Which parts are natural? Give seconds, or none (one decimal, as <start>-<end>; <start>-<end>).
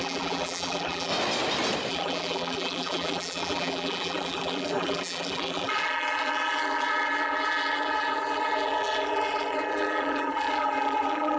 1.1-1.9